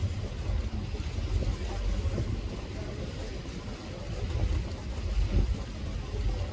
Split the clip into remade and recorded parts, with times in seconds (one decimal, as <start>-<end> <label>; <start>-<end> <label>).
0.0-6.5 recorded